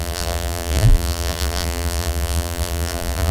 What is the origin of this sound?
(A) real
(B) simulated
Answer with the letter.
B